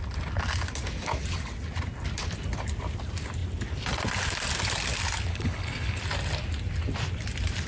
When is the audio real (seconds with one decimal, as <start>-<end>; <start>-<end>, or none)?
0.0-5.3; 6.0-7.7